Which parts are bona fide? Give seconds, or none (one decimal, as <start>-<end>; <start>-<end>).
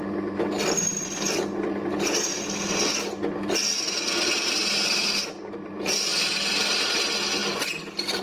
0.0-8.2